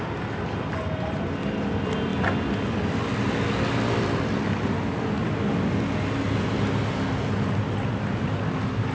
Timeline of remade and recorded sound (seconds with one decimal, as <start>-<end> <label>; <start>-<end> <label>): 0.0-8.9 recorded